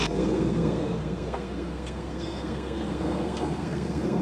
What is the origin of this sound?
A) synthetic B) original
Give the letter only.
A